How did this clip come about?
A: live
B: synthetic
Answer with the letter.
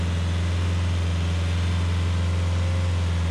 A